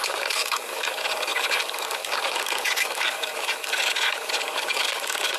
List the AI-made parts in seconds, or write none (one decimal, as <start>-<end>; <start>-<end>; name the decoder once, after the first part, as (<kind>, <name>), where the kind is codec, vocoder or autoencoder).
0.0-5.4 (codec, DAC)